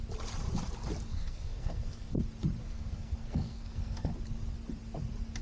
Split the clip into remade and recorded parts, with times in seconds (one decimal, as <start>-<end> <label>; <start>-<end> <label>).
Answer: 0.0-1.1 recorded; 1.1-2.1 remade; 2.1-2.6 recorded; 2.6-4.1 remade; 4.1-5.4 recorded